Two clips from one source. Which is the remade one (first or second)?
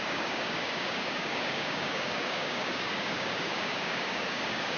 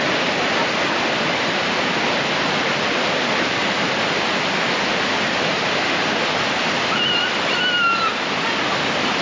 first